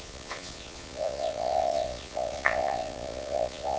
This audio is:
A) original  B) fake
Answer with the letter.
B